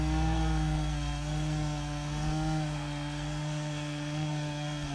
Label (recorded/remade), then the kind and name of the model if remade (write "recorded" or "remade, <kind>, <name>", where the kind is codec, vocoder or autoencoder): remade, codec, SNAC